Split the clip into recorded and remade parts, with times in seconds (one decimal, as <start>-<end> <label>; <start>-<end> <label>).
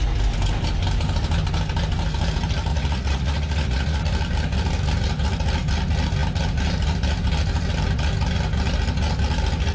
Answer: 0.0-2.7 recorded; 2.7-4.0 remade; 4.0-9.7 recorded